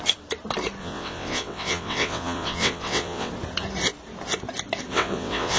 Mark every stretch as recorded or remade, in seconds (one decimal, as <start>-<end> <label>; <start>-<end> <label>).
0.0-0.8 recorded; 0.8-3.3 remade; 3.3-4.9 recorded; 4.9-5.6 remade